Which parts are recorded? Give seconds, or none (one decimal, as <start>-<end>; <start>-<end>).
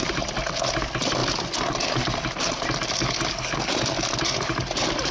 0.0-5.1